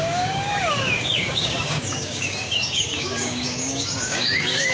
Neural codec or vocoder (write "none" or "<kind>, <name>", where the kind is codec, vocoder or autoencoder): codec, DAC